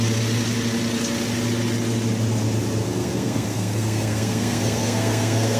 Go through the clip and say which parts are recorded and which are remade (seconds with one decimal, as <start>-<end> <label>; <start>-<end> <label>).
0.0-2.8 recorded; 2.8-5.6 remade